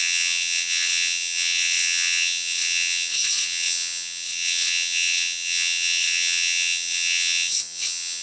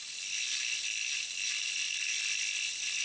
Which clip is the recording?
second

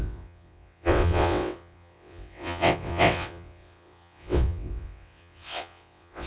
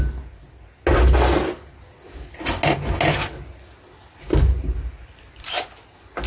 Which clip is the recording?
second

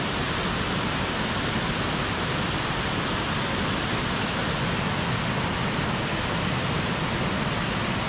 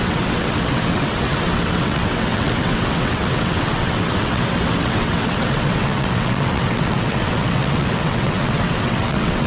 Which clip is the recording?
first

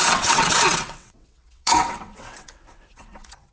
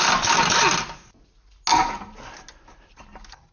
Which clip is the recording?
second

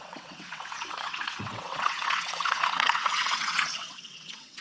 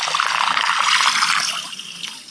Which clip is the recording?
second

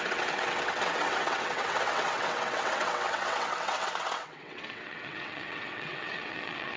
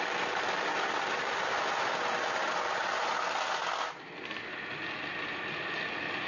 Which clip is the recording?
second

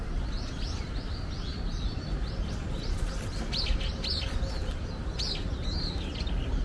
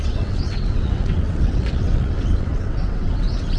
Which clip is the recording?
first